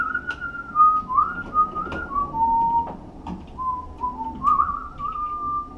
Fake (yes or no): no